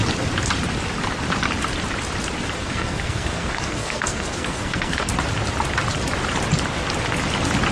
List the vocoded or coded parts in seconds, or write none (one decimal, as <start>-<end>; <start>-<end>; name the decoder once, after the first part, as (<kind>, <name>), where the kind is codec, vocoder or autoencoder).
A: 2.6-5.1 (codec, SNAC)